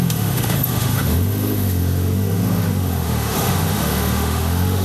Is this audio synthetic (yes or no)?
yes